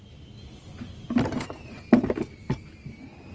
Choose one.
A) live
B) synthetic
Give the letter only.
A